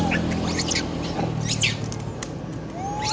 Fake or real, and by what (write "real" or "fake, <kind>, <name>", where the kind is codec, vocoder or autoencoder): real